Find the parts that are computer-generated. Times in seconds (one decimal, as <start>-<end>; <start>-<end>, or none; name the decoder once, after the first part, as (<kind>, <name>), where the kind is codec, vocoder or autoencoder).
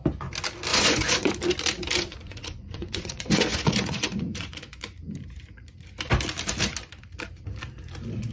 0.7-1.3 (vocoder, Vocos); 2.1-4.9